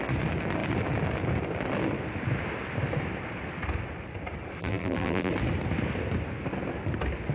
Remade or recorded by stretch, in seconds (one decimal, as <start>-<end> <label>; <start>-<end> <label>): 0.0-4.6 recorded; 4.6-5.3 remade; 5.3-7.3 recorded